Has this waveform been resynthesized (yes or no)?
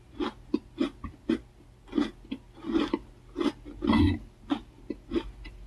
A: yes